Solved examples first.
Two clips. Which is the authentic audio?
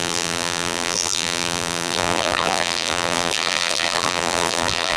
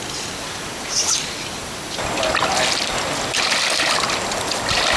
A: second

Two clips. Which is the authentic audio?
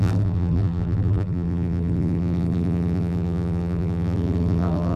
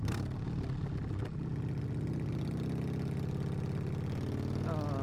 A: second